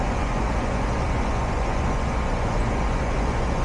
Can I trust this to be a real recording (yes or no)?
no